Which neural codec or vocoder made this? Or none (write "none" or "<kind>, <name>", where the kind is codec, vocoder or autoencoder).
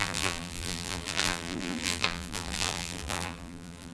vocoder, BigVGAN v2